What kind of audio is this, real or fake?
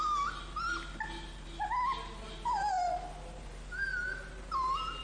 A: real